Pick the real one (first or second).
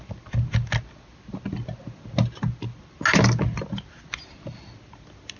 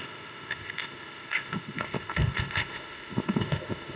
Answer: first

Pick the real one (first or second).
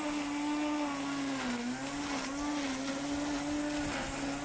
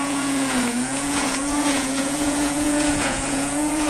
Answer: first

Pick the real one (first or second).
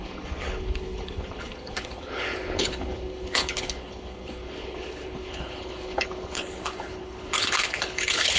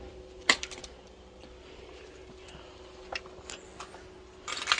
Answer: second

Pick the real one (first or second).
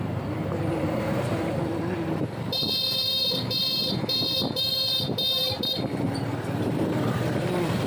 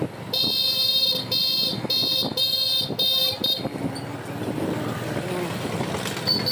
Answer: second